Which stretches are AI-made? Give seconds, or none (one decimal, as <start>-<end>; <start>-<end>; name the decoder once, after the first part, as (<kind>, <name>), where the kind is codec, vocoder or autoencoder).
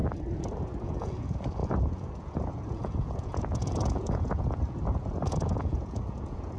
0.8-6.6 (vocoder, Vocos)